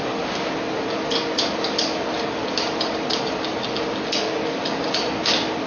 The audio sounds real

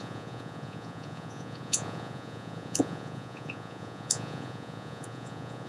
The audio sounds fake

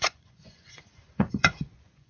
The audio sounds fake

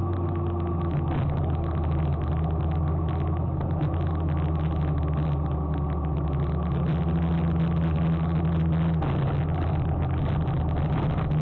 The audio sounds real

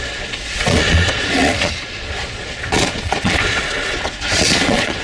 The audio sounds fake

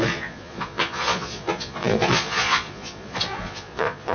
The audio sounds fake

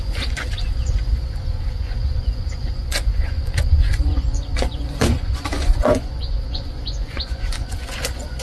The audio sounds fake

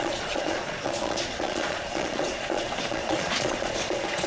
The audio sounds fake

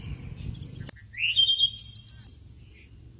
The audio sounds real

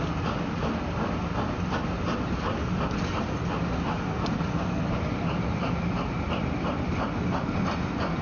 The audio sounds real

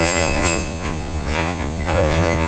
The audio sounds fake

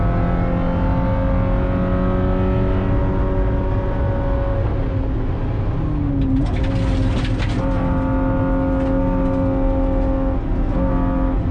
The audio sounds real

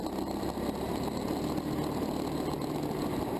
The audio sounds real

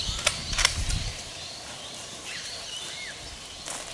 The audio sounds real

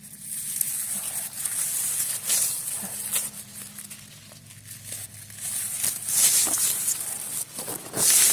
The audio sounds real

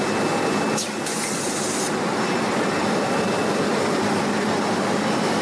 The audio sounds real